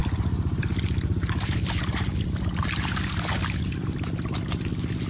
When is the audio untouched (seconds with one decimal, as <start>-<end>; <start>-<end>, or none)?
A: 0.0-5.1